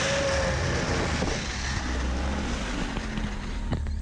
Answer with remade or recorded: recorded